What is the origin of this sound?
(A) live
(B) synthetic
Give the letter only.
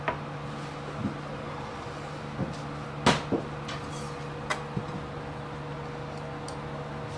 A